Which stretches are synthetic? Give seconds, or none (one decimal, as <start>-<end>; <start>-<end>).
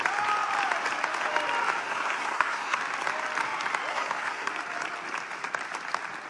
1.8-2.8; 3.9-4.5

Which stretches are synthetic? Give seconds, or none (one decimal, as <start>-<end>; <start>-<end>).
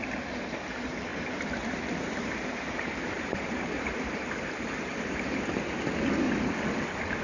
1.1-5.4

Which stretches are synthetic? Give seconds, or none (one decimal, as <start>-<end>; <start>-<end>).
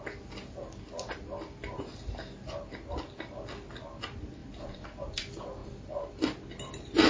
5.6-6.1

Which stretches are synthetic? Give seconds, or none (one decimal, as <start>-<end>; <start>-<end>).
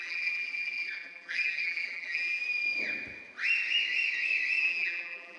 0.0-2.4; 4.6-5.4